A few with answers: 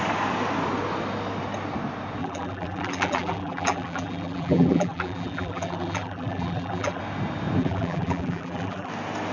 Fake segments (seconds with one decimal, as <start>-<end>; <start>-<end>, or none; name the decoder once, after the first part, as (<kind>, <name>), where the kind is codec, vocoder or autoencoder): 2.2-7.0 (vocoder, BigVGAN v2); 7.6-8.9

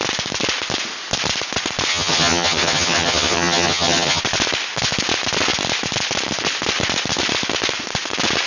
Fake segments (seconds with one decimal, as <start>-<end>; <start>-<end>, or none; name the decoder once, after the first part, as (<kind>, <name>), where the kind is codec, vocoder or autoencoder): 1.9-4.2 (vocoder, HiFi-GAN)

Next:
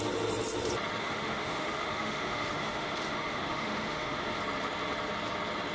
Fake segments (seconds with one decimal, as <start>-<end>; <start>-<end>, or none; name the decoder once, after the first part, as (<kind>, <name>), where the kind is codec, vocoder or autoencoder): 1.0-4.4 (autoencoder, DAC-VAE)